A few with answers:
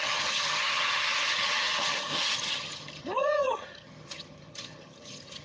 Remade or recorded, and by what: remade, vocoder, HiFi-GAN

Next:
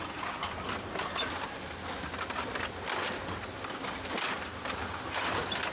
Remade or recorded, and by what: recorded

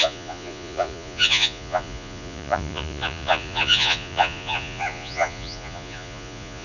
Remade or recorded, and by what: remade, vocoder, Vocos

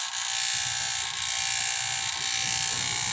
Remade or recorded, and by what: recorded